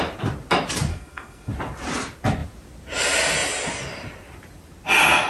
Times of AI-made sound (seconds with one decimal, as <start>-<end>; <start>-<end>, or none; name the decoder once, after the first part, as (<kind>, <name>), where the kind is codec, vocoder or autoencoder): 0.9-1.5 (codec, SNAC)